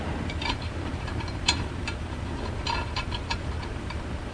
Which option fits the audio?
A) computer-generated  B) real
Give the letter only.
A